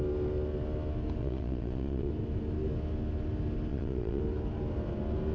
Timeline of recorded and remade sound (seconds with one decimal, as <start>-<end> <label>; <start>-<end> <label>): 0.0-1.2 recorded; 1.2-2.1 remade; 2.1-3.7 recorded; 3.7-4.2 remade; 4.2-5.3 recorded